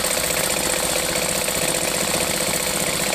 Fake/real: real